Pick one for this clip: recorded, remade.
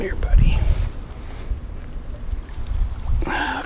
recorded